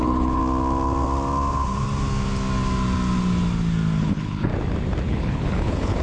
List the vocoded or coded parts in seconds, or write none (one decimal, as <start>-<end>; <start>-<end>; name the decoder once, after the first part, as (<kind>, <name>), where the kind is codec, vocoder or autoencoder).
0.0-0.4 (codec, HILCodec); 4.0-4.5; 5.1-6.0